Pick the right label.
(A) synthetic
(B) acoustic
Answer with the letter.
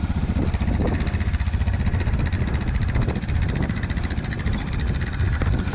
B